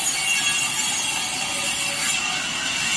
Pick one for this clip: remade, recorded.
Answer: recorded